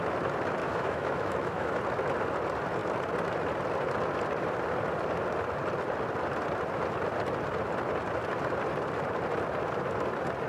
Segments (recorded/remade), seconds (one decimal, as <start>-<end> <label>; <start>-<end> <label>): 0.0-0.6 recorded; 0.6-1.8 remade; 1.8-10.5 recorded